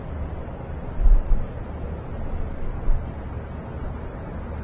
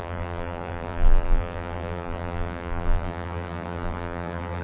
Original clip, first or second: first